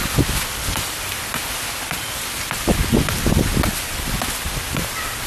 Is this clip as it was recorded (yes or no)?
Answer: yes